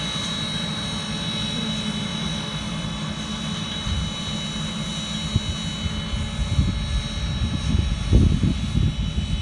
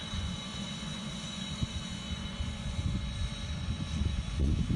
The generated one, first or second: second